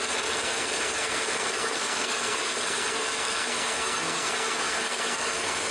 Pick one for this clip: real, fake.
fake